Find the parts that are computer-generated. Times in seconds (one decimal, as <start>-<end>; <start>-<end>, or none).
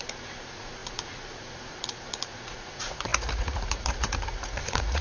0.0-5.0